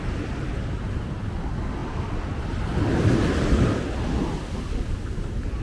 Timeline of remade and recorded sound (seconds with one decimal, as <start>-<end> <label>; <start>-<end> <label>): 0.0-5.6 recorded